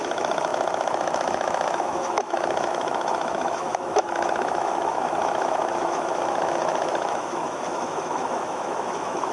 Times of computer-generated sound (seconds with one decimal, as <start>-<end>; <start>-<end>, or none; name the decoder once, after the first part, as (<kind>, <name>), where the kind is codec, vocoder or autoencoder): 0.0-9.3 (autoencoder, DAC-VAE)

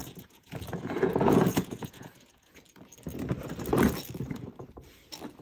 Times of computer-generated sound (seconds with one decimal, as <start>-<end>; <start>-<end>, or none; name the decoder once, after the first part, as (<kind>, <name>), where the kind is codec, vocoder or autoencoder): 0.0-2.6 (vocoder, Vocos)